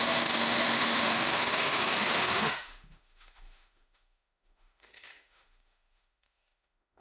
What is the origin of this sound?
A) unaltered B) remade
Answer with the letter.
B